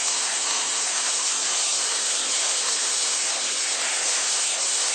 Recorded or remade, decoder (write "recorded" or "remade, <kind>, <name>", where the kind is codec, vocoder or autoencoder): remade, codec, SNAC